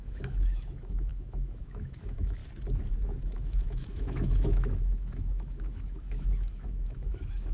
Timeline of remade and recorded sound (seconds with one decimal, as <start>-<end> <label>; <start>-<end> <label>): 0.0-2.4 remade; 2.4-3.2 recorded; 3.2-7.5 remade